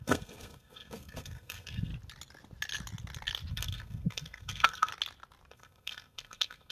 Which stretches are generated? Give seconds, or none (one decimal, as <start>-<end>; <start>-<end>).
0.0-1.9; 3.5-4.9; 5.5-6.7